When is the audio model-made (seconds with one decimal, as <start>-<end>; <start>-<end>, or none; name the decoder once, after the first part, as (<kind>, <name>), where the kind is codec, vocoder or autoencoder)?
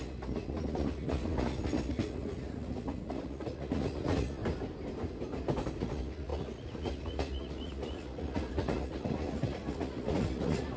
0.0-4.4 (vocoder, Vocos); 5.8-10.8